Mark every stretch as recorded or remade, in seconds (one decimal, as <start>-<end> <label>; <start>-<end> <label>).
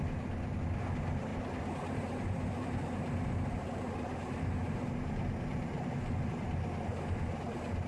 0.0-7.9 recorded